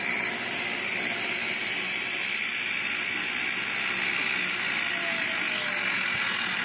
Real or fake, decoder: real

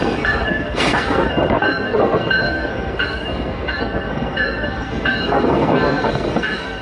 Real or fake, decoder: fake, codec, SNAC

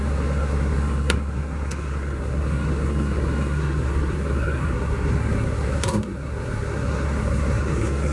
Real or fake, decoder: fake, codec, SNAC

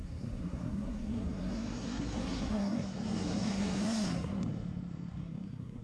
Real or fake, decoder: fake, codec, SNAC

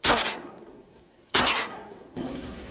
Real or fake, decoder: fake, codec, SNAC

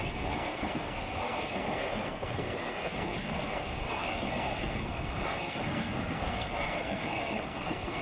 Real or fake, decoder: fake, codec, SNAC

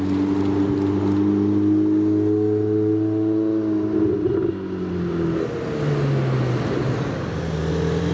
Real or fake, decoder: real